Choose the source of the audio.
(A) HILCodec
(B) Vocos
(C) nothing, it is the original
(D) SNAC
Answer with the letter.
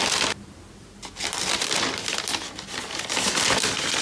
C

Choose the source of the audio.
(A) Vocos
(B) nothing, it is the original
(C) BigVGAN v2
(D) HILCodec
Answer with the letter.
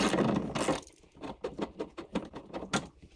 B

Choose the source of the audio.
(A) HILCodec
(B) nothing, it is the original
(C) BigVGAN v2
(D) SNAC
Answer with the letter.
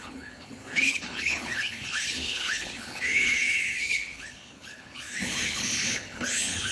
A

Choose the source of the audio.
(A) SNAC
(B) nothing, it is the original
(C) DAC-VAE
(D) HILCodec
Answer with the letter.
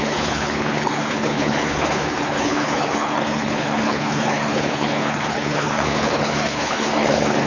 D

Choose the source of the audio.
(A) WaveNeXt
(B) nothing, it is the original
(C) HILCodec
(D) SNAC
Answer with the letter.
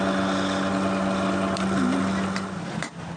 B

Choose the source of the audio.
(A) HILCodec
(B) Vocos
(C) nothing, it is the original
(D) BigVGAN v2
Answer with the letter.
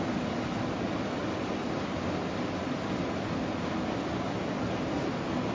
C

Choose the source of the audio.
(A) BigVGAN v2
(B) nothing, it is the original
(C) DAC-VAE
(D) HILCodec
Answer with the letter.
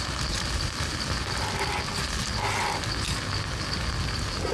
B